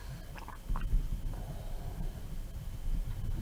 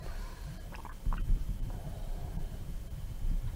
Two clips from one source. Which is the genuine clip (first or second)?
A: first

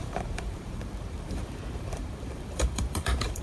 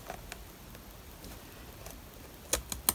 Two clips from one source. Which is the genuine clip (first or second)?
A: second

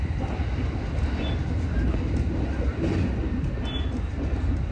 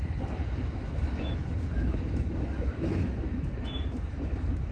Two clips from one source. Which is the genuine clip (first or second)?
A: first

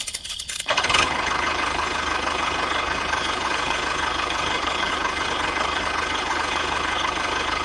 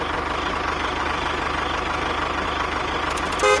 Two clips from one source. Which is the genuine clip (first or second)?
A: second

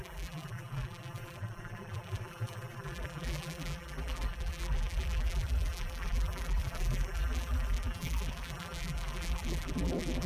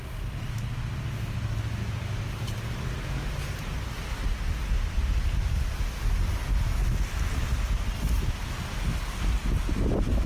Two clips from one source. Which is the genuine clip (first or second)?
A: second